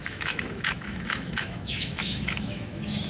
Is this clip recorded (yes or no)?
no